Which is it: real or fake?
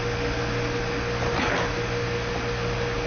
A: real